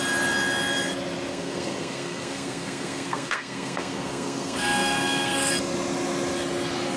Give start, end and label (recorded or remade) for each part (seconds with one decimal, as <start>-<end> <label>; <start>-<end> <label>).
0.0-1.3 recorded; 1.3-5.5 remade; 5.5-7.0 recorded